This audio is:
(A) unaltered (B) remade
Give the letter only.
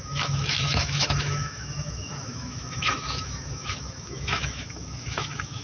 B